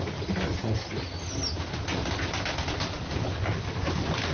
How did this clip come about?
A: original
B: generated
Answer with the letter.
B